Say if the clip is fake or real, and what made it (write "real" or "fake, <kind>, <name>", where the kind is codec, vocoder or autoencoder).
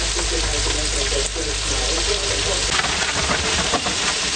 real